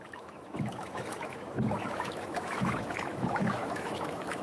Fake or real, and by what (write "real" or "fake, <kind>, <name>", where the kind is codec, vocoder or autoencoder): fake, autoencoder, DAC-VAE